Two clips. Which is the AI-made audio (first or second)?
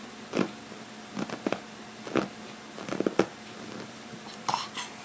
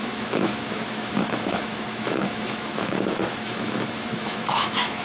second